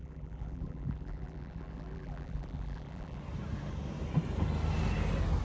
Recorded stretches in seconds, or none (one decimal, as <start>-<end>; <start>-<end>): 3.2-5.4